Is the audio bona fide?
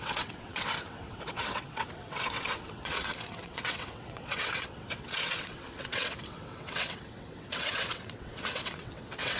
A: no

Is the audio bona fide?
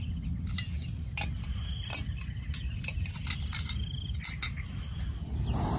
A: yes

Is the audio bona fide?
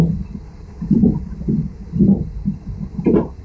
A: yes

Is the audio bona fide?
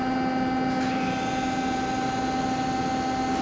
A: yes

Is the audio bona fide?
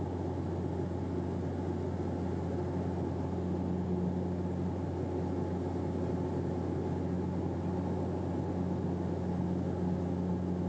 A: yes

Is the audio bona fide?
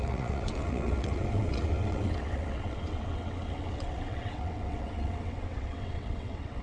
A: no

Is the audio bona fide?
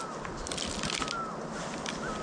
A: yes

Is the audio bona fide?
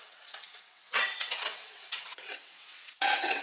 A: no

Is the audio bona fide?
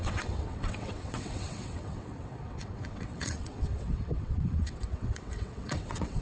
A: no